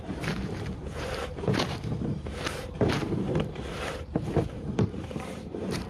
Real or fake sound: fake